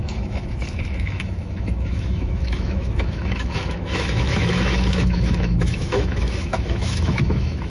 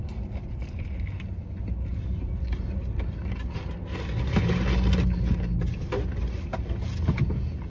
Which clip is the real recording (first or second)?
second